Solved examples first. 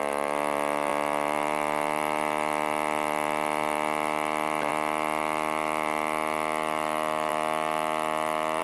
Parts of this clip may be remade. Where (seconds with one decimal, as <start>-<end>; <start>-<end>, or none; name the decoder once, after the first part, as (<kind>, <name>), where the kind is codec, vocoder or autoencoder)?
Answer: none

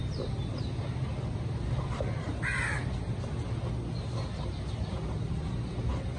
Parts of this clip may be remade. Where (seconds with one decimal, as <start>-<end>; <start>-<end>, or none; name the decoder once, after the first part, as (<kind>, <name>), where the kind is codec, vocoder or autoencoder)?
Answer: 2.3-3.6 (vocoder, BigVGAN v2)

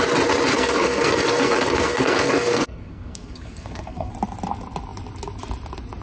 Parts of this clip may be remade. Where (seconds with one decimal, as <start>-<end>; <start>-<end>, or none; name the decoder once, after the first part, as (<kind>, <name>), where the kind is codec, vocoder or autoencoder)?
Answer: 0.5-4.1 (codec, SNAC)

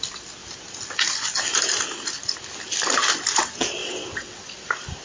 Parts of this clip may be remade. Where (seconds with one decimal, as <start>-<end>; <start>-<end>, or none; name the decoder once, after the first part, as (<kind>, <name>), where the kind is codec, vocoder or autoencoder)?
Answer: 3.8-4.5 (vocoder, WaveNeXt)

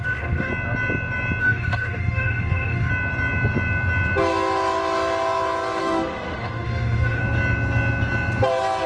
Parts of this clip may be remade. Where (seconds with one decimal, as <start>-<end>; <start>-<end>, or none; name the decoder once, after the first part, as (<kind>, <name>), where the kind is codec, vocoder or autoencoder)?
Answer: 0.0-0.5 (autoencoder, DAC-VAE); 1.4-2.9; 5.8-7.2